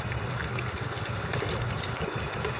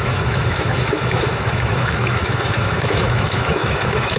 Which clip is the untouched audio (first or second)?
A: first